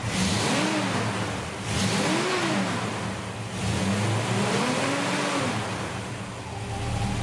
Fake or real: real